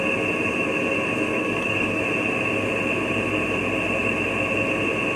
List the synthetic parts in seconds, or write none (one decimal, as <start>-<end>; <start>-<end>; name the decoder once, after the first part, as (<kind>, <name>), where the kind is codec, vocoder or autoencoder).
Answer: 1.3-2.0 (codec, DAC)